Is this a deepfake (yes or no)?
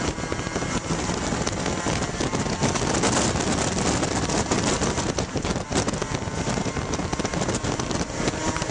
no